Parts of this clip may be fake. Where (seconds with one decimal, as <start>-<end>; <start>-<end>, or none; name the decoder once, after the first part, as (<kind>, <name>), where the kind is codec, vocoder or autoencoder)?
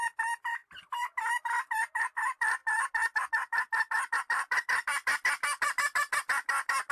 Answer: 0.0-0.6 (vocoder, BigVGAN v2); 1.4-2.6; 3.3-6.9